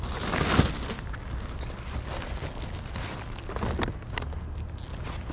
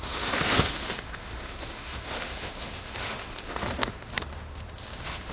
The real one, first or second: first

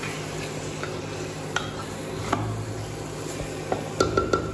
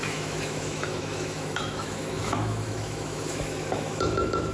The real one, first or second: first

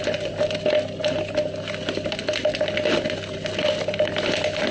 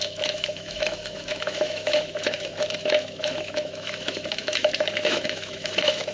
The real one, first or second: first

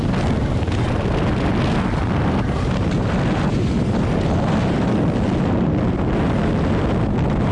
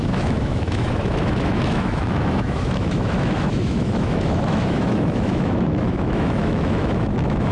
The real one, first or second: first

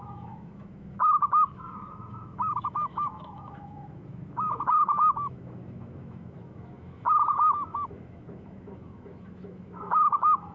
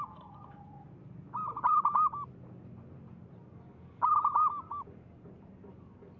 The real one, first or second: second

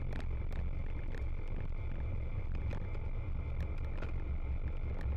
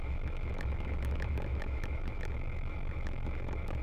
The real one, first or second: first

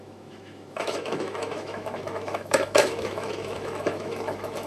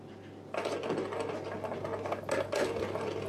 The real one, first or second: second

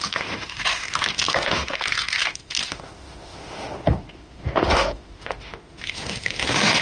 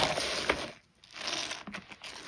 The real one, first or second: second